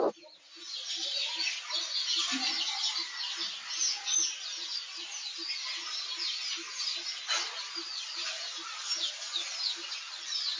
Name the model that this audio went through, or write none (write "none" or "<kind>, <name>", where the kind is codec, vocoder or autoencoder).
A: none